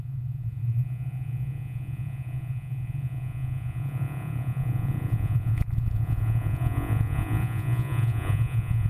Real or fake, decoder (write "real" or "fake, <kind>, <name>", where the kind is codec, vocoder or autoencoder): fake, vocoder, Vocos